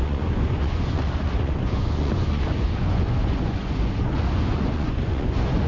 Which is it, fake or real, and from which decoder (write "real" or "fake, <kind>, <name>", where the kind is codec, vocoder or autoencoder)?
fake, vocoder, Vocos